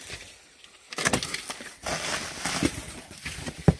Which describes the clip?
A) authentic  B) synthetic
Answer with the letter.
A